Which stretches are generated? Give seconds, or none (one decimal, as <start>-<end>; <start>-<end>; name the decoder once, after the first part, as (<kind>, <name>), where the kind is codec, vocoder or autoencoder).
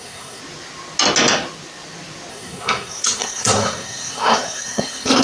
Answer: 0.0-0.4 (codec, SNAC); 2.3-5.2